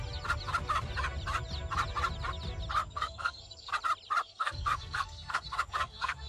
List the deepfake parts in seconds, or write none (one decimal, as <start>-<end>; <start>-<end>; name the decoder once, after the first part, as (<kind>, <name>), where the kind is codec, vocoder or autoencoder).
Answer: 2.8-3.7 (codec, SNAC); 4.2-6.3

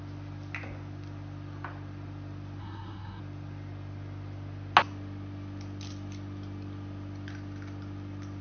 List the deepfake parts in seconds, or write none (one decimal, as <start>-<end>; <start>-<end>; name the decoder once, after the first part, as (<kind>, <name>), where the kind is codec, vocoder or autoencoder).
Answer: 2.6-3.2 (codec, SNAC)

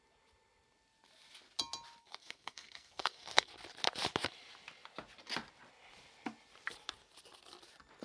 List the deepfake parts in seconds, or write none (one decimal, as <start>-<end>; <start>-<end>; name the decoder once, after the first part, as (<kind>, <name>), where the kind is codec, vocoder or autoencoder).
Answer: 2.0-3.5 (codec, SNAC)